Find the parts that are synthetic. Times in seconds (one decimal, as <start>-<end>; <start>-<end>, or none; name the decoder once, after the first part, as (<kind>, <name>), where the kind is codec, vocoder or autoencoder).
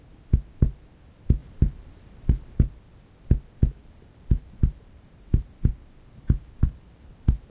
1.4-2.6 (vocoder, BigVGAN v2); 3.8-7.1